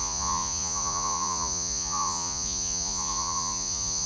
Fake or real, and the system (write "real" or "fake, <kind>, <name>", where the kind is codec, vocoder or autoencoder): fake, vocoder, Vocos